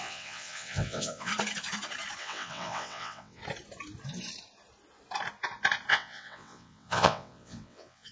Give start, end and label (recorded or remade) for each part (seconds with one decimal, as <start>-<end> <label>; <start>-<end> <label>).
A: 0.0-1.3 remade; 1.3-2.2 recorded; 2.2-3.4 remade; 3.4-5.9 recorded; 5.9-8.1 remade